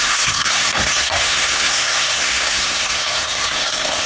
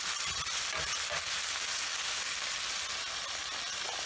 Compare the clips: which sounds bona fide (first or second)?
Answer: second